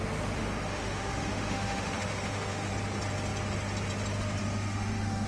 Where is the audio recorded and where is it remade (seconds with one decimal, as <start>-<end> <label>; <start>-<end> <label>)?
0.0-2.7 remade; 2.7-4.4 recorded; 4.4-5.3 remade